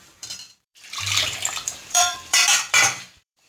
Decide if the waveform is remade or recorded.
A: remade